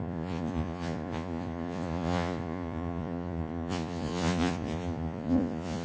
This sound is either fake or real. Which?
fake